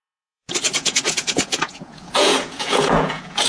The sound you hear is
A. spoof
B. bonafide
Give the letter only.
A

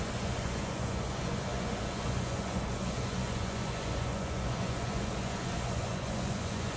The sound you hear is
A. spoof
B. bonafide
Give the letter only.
A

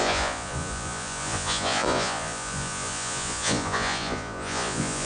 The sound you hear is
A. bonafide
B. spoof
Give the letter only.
B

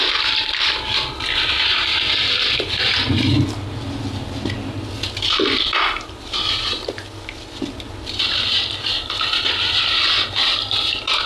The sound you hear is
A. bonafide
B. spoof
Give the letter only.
A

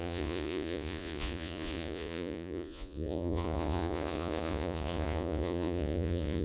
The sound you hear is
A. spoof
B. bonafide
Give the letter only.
A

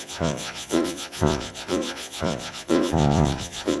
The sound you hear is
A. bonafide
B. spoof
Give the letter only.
B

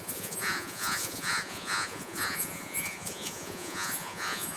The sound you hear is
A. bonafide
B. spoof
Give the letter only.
B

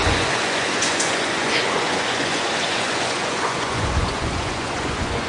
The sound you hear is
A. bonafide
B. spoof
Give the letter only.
B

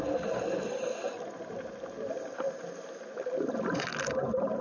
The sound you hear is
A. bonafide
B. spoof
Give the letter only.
A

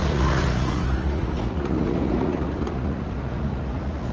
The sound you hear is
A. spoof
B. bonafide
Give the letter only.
A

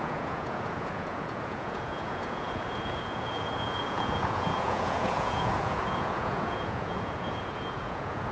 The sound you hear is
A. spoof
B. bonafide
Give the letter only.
A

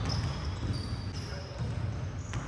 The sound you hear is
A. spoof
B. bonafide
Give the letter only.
B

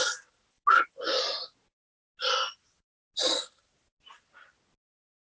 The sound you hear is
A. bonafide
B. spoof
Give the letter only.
A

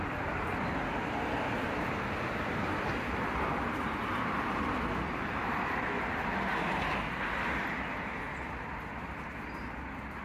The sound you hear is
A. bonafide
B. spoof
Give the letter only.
A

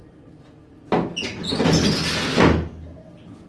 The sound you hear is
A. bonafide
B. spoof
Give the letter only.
A